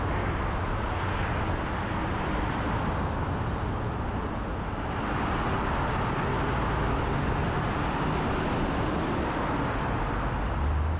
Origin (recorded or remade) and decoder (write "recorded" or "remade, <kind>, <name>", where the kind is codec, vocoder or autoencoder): recorded